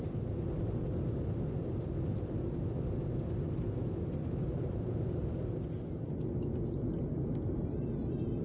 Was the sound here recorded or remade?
recorded